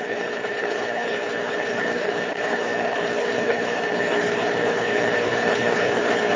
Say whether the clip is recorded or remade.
remade